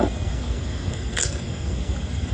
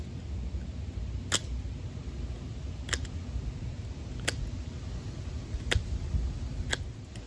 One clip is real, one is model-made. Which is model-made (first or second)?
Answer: first